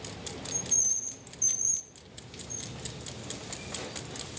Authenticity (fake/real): real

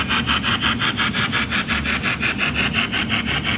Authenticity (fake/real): real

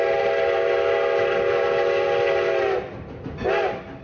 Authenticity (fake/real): real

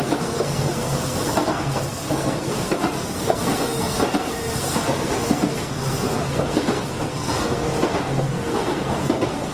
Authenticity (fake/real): fake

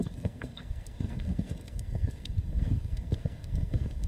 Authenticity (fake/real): fake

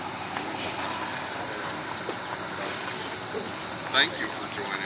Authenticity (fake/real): real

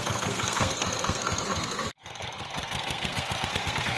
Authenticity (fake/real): fake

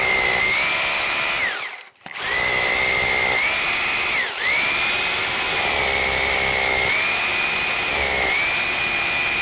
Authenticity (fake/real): real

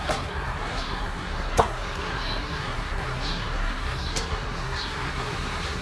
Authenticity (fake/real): fake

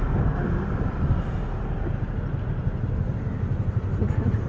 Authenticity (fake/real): real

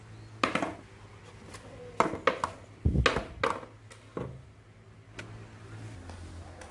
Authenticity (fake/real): real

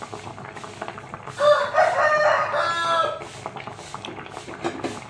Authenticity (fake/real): real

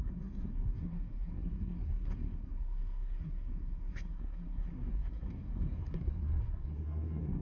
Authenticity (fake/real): fake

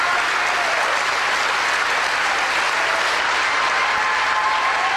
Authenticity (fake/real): real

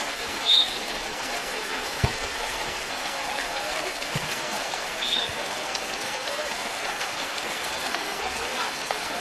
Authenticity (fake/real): fake